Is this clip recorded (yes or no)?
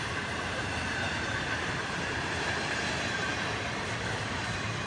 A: yes